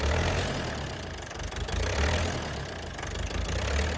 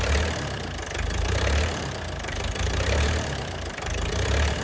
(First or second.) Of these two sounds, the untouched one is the first